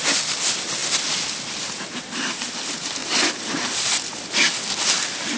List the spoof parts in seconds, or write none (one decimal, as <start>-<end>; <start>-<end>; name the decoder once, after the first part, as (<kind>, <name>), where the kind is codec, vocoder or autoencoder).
none